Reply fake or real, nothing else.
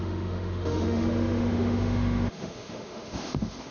fake